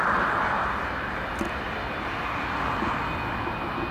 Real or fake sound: real